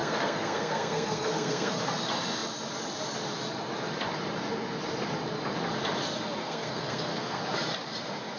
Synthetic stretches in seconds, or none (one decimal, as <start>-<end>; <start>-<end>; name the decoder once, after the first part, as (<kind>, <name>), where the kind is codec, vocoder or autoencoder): 0.0-1.8 (codec, SNAC); 6.4-7.4